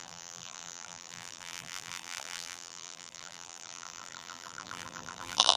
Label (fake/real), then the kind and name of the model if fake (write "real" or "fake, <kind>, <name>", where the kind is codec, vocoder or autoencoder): fake, vocoder, BigVGAN v2